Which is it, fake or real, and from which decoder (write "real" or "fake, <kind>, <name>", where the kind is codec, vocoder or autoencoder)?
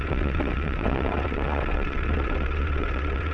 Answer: fake, vocoder, WaveNeXt